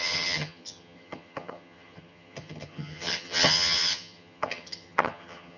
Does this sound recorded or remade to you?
remade